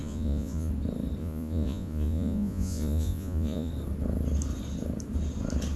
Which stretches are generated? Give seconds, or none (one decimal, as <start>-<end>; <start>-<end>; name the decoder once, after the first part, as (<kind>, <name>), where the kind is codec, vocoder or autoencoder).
0.0-0.7 (vocoder, Vocos); 1.2-3.7